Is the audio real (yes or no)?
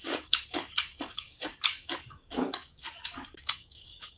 no